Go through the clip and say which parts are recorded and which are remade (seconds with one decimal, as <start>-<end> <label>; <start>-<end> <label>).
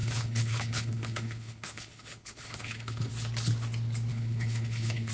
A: 0.0-3.1 remade; 3.1-4.1 recorded; 4.1-5.1 remade